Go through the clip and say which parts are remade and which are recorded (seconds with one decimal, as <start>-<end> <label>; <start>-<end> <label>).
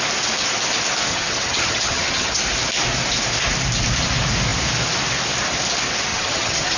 0.0-1.1 recorded; 1.1-2.4 remade; 2.4-6.1 recorded; 6.1-6.8 remade